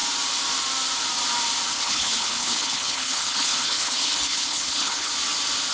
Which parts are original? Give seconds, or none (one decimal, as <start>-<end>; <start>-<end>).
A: 0.0-1.7; 5.1-5.7